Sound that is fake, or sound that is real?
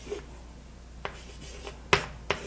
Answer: real